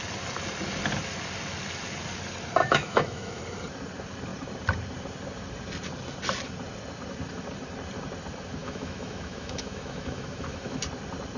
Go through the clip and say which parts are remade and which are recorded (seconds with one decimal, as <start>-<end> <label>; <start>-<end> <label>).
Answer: 0.0-2.6 recorded; 2.6-3.4 remade; 3.4-8.6 recorded; 8.6-10.8 remade; 10.8-11.4 recorded